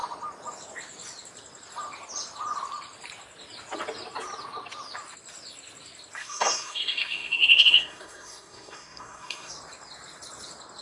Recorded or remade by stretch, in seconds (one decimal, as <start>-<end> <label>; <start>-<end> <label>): 0.0-6.2 recorded; 6.2-9.5 remade; 9.5-10.8 recorded